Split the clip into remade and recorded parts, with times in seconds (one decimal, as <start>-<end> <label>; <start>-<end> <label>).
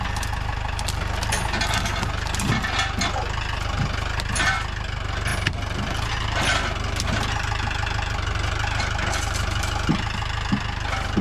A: 0.0-11.2 recorded